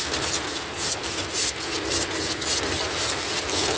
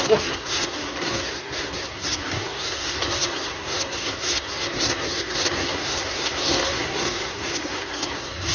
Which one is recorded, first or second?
first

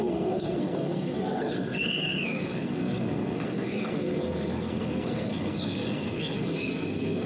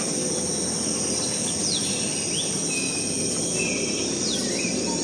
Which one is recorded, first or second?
second